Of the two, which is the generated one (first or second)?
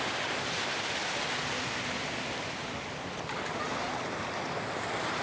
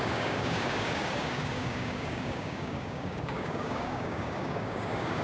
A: second